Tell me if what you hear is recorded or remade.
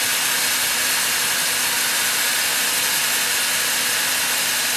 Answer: recorded